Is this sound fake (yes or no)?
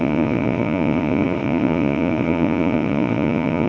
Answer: yes